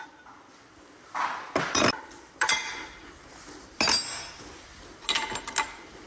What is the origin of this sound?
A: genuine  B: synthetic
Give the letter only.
A